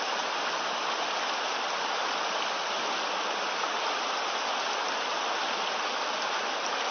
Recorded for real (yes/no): no